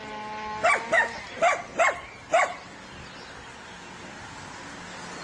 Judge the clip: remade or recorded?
recorded